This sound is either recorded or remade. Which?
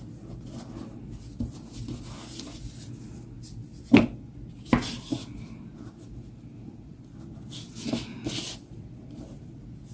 recorded